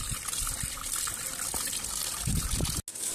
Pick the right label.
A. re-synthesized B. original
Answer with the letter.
B